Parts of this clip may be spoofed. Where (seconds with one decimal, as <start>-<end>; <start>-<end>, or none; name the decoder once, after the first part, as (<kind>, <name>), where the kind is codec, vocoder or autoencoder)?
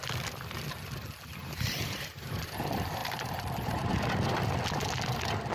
1.4-2.2 (vocoder, BigVGAN v2); 3.0-4.3